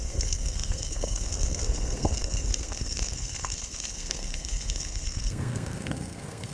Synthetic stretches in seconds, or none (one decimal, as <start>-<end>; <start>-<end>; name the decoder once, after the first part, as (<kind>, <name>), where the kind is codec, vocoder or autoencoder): 0.0-6.5 (codec, SNAC)